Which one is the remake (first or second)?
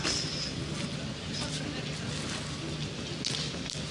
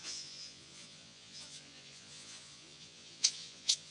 second